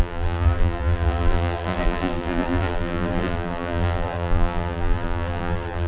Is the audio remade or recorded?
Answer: remade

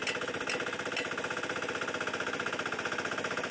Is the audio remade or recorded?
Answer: recorded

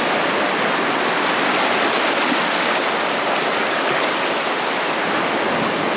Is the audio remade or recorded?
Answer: recorded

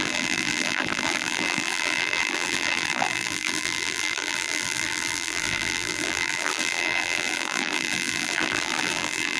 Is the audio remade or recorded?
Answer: remade